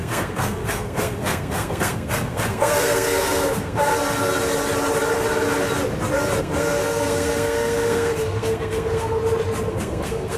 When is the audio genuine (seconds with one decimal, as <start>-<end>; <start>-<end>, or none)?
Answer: 3.9-6.4; 9.2-9.7